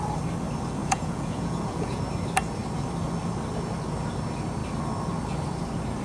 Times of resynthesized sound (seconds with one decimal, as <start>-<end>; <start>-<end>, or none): 0.8-2.0